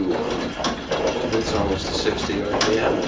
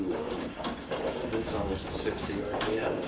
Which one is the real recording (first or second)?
first